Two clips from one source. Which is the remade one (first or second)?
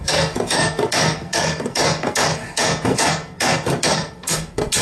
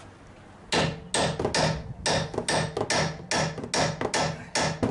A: first